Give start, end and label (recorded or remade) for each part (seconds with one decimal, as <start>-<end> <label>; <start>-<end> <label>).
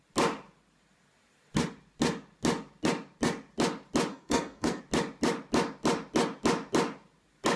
0.0-4.1 recorded; 4.1-4.8 remade; 4.8-7.6 recorded